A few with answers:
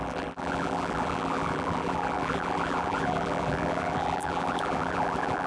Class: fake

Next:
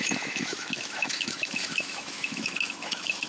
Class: fake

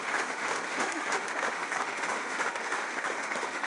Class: fake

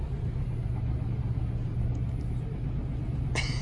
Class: real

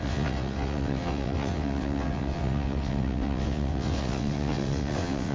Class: fake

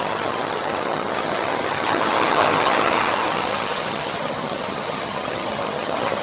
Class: fake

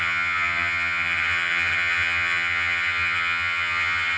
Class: fake